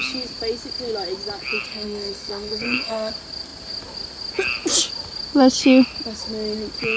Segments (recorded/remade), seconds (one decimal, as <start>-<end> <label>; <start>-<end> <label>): 0.0-1.7 recorded; 1.7-3.1 remade; 3.1-7.0 recorded